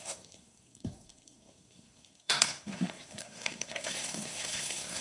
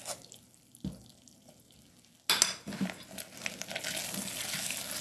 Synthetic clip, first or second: first